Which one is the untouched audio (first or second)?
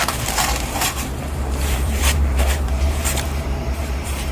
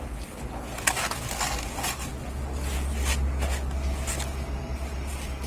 second